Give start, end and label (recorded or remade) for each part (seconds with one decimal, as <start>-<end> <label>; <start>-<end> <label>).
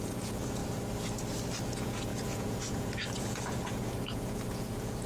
0.0-0.6 remade; 0.6-1.7 recorded; 1.7-5.1 remade